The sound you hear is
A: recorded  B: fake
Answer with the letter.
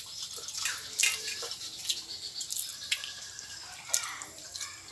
A